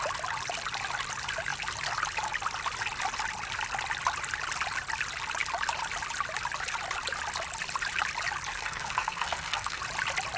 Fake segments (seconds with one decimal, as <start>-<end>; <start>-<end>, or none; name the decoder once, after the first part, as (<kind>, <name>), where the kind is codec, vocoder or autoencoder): 8.5-9.8 (codec, SNAC)